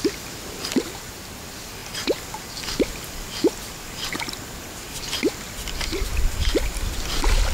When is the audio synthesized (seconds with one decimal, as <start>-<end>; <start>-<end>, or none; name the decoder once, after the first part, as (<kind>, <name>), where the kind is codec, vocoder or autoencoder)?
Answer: none